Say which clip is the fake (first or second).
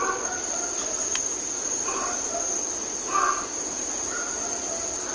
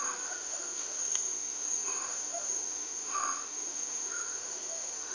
second